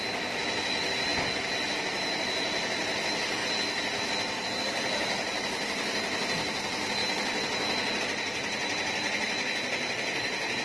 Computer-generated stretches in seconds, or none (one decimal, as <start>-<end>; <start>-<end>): none